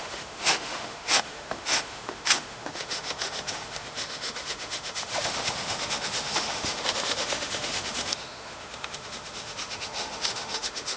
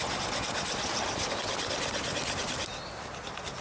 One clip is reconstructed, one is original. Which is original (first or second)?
second